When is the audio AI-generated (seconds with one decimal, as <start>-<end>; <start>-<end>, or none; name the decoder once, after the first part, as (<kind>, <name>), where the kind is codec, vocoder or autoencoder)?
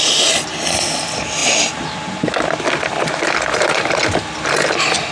none